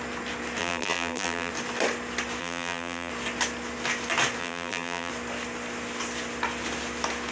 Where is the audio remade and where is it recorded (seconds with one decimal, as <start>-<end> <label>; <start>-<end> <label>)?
0.0-0.6 recorded; 0.6-1.5 remade; 1.5-2.4 recorded; 2.4-3.1 remade; 3.1-4.4 recorded; 4.4-5.1 remade; 5.1-7.3 recorded